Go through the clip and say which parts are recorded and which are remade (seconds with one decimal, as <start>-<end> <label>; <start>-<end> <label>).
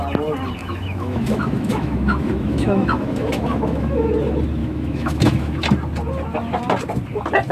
0.0-0.6 recorded; 0.6-4.1 remade; 4.1-4.6 recorded; 4.6-5.6 remade; 5.6-7.5 recorded